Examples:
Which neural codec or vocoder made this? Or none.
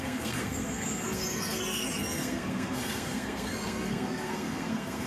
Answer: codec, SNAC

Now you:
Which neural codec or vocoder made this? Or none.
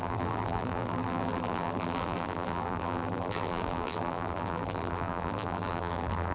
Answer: vocoder, BigVGAN v2